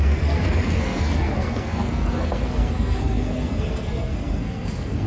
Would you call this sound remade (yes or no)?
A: yes